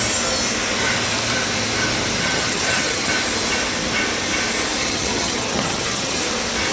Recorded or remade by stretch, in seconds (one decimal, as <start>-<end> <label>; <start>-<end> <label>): 0.0-2.2 recorded; 2.2-3.1 remade; 3.1-4.8 recorded; 4.8-6.2 remade; 6.2-6.7 recorded